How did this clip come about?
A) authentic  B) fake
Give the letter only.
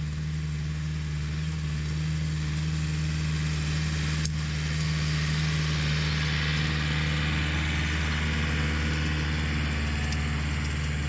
A